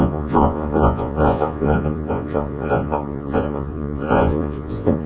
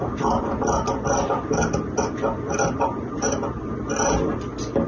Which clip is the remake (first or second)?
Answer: first